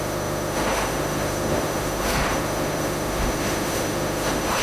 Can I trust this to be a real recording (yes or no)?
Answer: no